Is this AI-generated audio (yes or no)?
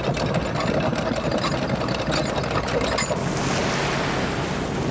no